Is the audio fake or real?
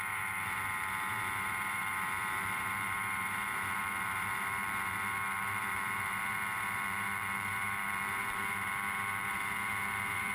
fake